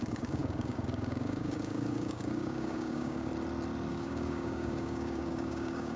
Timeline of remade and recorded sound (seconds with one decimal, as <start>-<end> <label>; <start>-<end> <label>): 0.0-3.3 remade; 3.3-3.9 recorded; 3.9-6.0 remade